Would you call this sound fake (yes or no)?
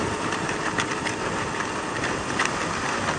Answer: no